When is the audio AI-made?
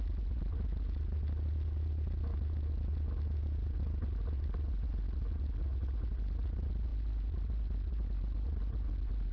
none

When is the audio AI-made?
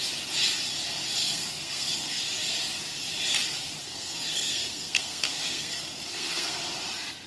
1.2-2.2; 3.8-6.6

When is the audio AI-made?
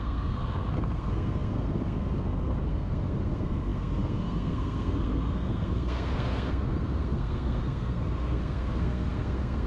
0.0-9.7